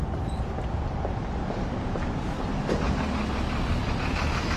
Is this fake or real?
real